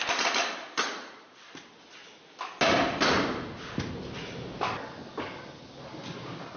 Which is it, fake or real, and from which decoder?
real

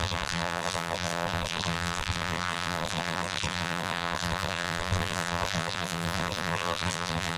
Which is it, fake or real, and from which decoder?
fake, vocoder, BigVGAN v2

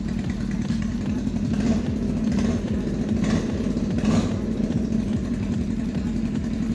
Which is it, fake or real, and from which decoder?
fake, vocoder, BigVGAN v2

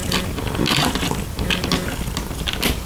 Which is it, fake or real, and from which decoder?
real